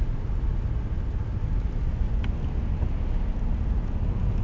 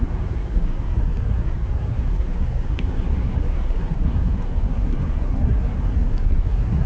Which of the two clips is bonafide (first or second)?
first